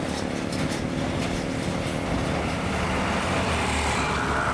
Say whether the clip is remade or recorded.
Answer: recorded